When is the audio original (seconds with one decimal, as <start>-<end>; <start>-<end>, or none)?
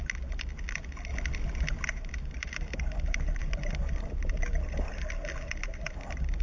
0.0-6.4